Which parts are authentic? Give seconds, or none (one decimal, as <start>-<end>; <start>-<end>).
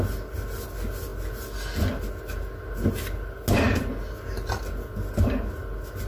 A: 0.0-6.1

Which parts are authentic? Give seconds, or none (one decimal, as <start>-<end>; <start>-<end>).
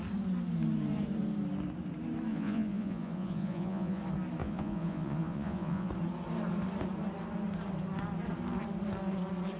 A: 0.0-2.3; 4.0-4.4; 5.9-9.6